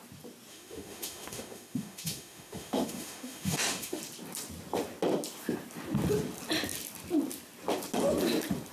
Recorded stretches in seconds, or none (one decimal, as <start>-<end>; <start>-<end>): 0.0-0.5; 4.0-8.7